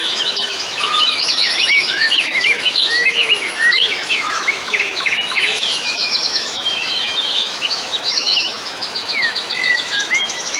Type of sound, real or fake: fake